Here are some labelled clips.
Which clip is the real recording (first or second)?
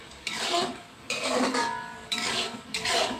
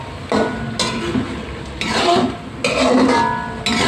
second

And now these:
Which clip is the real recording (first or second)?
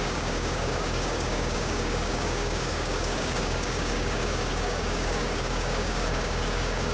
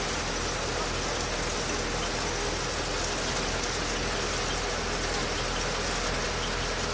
second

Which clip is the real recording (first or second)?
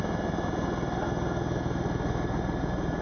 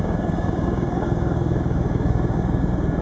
first